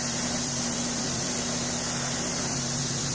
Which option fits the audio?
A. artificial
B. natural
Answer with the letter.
A